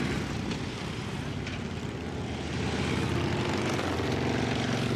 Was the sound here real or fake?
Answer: real